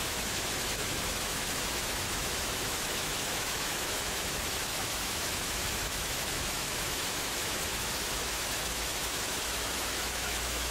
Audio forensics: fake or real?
fake